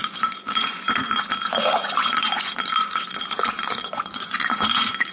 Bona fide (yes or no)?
no